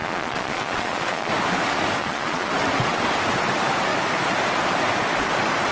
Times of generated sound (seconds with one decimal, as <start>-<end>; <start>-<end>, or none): 0.0-1.3; 2.0-2.5